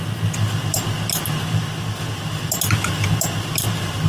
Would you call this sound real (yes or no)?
yes